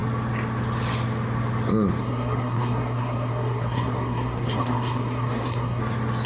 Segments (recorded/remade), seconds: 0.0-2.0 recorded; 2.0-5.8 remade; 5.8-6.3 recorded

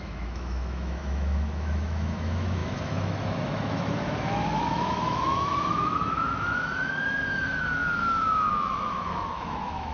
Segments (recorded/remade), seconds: 0.0-9.9 remade

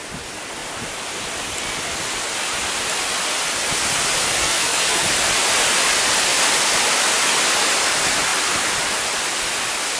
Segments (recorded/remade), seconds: 0.0-4.4 recorded; 4.4-5.0 remade; 5.0-10.0 recorded

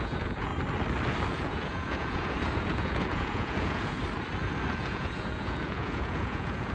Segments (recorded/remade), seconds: 0.0-0.5 remade; 0.5-1.3 recorded; 1.3-4.0 remade; 4.0-4.7 recorded; 4.7-6.7 remade

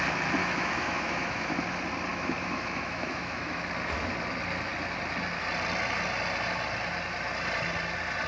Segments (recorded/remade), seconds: 0.0-0.4 recorded; 0.4-1.6 remade; 1.6-2.1 recorded; 2.1-3.6 remade; 3.6-8.3 recorded

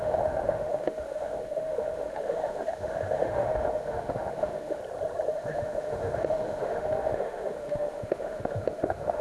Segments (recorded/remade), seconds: 0.0-4.8 remade; 4.8-5.3 recorded; 5.3-9.2 remade

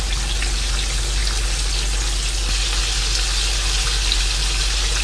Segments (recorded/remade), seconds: 0.0-5.0 recorded